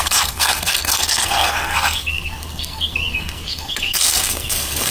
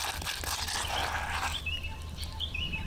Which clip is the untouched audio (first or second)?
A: second